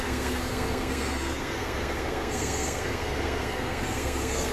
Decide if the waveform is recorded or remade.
remade